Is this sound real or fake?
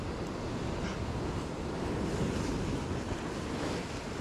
real